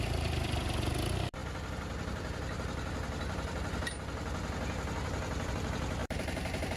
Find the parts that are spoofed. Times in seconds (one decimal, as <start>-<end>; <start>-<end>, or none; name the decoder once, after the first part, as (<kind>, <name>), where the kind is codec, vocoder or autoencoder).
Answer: 6.0-6.8 (vocoder, BigVGAN v2)